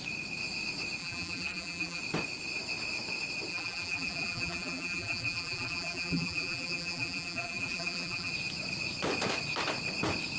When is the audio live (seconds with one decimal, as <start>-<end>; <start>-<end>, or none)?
0.0-1.0; 2.0-3.5; 8.3-10.4